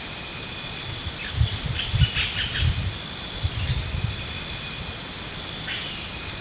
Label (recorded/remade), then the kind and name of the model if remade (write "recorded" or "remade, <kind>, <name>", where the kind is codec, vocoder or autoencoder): recorded